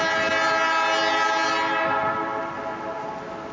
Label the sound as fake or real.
real